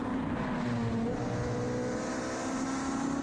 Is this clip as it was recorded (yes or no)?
yes